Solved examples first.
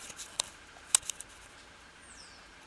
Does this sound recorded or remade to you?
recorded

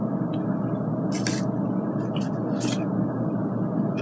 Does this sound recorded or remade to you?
recorded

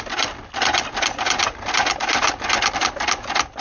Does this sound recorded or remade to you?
recorded